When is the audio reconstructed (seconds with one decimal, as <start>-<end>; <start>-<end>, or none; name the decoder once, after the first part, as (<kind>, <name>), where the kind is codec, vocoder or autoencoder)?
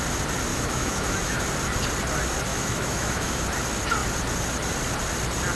0.5-1.4 (autoencoder, DAC-VAE); 2.5-3.4